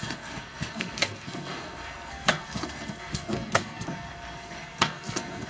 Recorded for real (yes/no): no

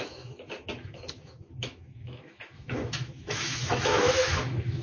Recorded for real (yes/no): no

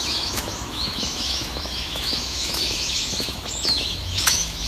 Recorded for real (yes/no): no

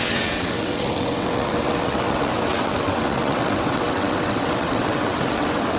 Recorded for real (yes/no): no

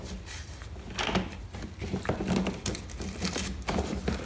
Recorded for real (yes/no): yes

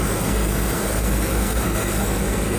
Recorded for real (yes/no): no